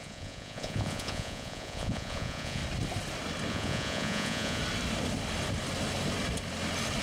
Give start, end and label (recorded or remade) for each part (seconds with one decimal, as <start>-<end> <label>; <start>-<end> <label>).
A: 0.0-2.6 remade; 2.6-3.5 recorded; 3.5-4.6 remade; 4.6-7.0 recorded